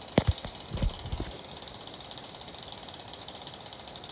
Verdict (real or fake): real